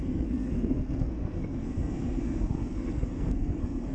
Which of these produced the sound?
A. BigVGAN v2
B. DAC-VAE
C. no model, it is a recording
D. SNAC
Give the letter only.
D